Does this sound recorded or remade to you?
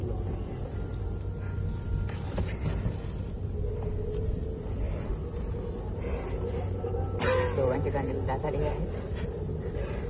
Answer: recorded